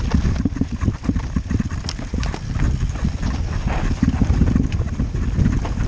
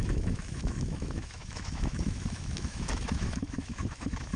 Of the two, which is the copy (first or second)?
second